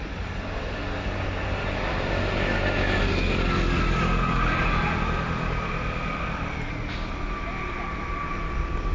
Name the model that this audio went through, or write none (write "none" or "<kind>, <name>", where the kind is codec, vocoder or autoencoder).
none